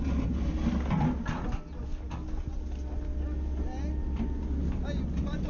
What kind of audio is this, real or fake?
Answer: real